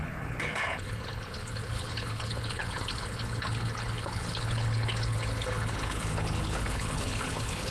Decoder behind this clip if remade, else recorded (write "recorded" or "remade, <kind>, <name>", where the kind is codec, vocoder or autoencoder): remade, codec, HILCodec